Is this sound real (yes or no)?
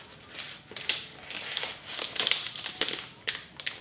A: yes